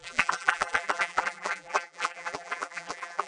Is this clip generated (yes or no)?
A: yes